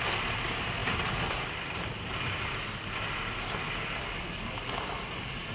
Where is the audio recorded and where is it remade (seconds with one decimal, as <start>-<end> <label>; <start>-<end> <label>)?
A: 0.0-5.5 remade